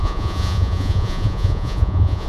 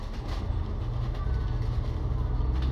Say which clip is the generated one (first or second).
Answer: first